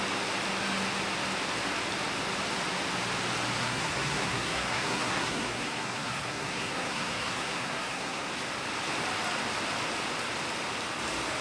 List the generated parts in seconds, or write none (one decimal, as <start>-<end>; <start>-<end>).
3.6-8.3